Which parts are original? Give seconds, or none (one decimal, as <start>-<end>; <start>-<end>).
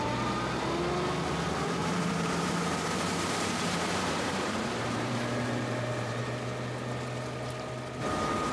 0.0-1.8; 6.2-8.5